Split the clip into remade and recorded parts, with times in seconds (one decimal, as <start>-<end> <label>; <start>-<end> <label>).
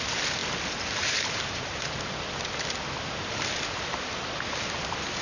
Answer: 0.0-5.2 recorded